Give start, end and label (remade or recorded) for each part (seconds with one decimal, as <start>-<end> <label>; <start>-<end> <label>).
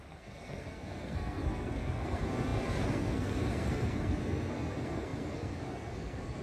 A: 0.0-6.4 remade